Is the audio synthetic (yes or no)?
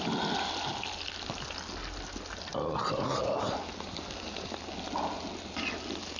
no